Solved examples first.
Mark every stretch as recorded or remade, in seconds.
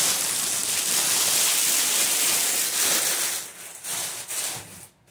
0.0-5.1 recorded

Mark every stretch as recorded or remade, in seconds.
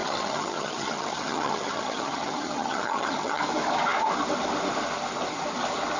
0.0-3.4 remade; 3.4-6.0 recorded